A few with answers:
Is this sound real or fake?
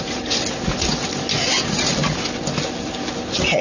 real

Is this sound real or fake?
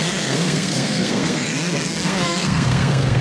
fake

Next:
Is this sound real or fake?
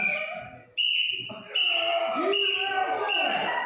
real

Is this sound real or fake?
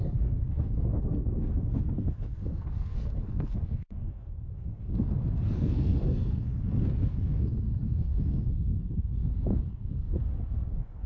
fake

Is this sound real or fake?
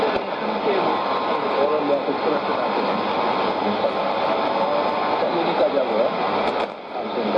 real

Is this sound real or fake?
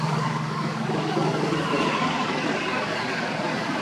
fake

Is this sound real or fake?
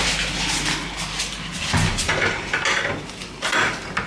real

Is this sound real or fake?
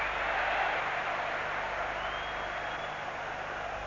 real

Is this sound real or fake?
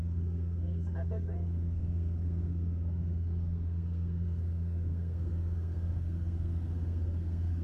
fake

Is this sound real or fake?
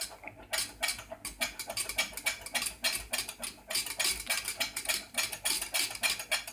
real